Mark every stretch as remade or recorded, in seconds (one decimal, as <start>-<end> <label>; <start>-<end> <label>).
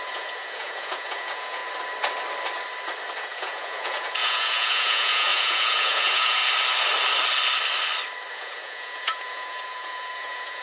0.0-1.6 remade; 1.6-3.2 recorded; 3.2-6.4 remade; 6.4-8.3 recorded; 8.3-10.6 remade